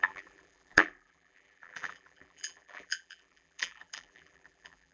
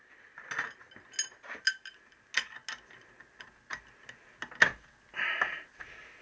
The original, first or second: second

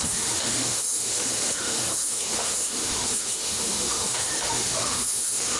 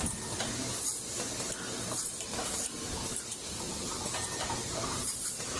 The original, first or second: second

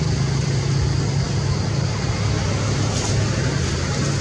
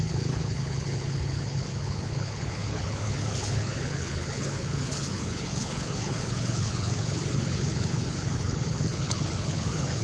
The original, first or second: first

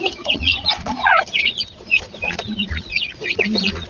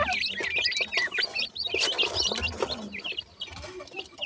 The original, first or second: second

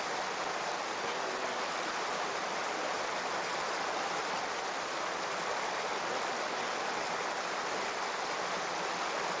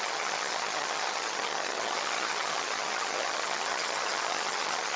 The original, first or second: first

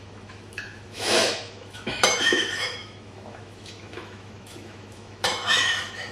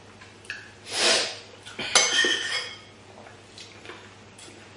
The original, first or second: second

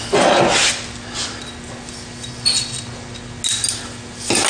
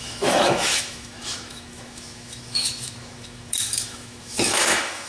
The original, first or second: first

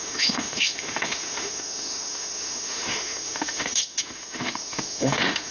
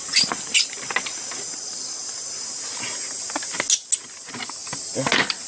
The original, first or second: second